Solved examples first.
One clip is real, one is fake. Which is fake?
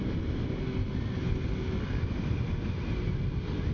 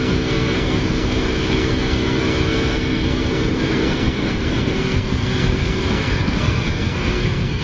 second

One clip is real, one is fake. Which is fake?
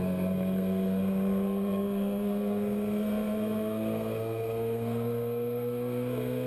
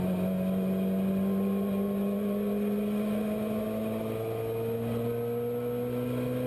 first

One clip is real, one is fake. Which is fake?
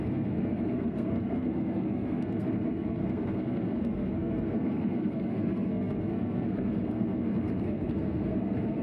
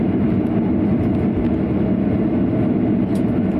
first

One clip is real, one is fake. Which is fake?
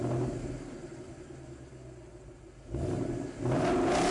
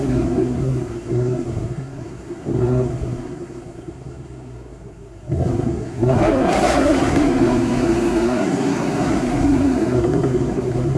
second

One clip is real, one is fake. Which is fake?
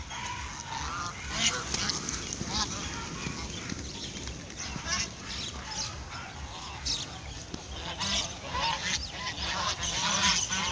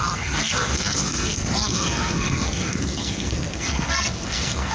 second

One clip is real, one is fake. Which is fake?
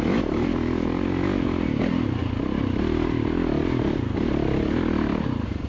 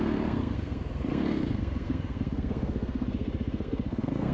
second